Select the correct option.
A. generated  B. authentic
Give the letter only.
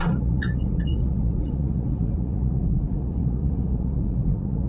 A